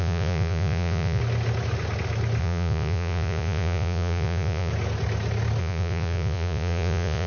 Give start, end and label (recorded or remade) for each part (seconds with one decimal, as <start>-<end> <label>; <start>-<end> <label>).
0.0-1.2 remade; 1.2-2.4 recorded; 2.4-4.7 remade; 4.7-5.6 recorded; 5.6-7.3 remade